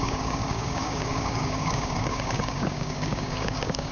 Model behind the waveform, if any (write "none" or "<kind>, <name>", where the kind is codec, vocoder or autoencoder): codec, DAC